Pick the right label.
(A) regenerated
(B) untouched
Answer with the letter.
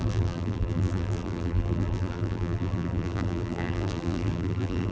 A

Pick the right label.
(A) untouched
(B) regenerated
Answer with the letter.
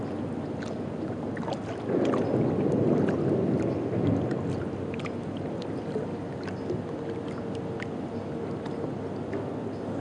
A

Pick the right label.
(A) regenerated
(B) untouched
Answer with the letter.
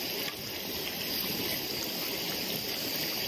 B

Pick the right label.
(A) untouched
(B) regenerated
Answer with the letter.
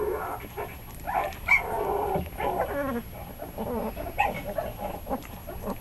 A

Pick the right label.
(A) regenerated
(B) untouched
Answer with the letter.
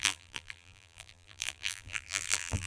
A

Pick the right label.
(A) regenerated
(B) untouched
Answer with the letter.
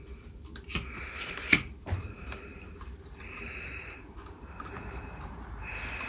A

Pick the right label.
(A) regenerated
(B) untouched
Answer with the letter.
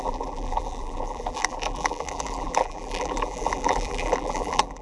A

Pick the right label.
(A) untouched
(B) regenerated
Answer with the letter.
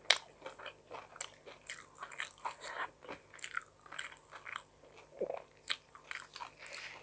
A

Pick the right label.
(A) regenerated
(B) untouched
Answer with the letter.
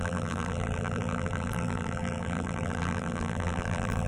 A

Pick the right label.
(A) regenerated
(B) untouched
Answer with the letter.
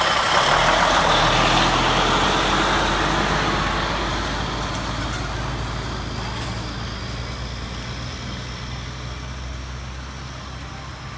B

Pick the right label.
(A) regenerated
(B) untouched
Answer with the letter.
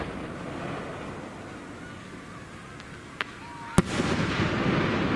B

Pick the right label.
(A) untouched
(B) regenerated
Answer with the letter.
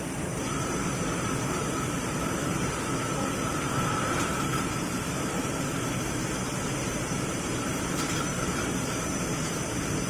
B